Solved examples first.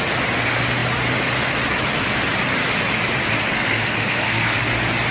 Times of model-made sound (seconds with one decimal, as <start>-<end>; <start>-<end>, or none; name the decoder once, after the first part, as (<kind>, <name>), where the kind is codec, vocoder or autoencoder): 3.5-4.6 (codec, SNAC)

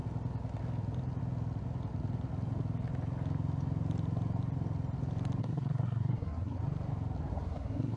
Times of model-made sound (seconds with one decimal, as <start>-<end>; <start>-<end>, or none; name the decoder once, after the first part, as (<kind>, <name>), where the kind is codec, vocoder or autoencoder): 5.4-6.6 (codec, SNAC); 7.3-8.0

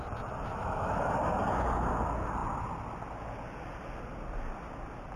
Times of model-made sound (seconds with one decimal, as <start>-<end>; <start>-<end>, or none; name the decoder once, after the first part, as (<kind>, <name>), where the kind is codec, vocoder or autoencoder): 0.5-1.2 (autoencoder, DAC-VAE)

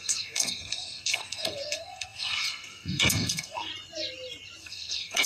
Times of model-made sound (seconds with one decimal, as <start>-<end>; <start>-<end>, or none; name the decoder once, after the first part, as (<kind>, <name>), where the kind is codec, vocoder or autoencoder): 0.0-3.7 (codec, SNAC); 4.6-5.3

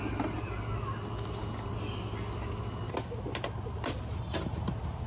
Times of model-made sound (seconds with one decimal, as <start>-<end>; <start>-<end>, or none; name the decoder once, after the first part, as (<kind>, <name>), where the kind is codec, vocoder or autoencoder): none

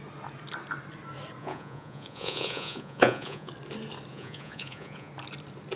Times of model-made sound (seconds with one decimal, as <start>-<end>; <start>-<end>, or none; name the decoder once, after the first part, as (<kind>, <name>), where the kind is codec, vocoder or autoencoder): 1.4-3.5 (vocoder, Vocos); 4.1-5.1

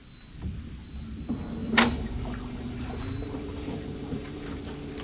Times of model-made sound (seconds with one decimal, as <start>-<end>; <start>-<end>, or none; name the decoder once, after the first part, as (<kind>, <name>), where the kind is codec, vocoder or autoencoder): 1.6-4.6 (vocoder, BigVGAN v2)

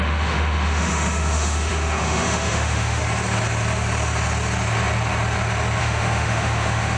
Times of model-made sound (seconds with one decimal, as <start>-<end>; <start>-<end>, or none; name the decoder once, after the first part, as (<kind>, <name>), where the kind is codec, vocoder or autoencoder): 0.0-3.0 (autoencoder, DAC-VAE); 5.8-7.0